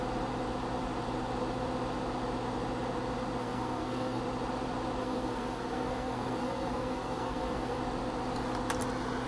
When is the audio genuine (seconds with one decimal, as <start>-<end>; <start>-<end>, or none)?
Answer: 0.0-3.4; 4.2-5.0; 7.8-9.3